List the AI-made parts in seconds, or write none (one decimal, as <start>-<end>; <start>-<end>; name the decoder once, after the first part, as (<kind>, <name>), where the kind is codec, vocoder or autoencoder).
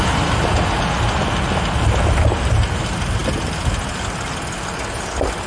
none